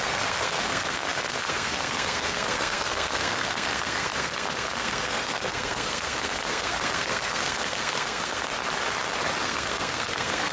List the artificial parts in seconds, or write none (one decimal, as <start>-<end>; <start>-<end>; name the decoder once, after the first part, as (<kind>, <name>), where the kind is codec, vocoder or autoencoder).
0.0-8.5 (codec, SNAC); 9.4-10.5